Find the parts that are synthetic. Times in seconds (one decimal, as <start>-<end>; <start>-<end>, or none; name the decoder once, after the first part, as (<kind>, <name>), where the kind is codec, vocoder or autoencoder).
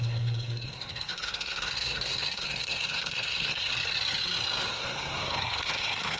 0.0-3.7 (codec, SNAC); 4.7-6.2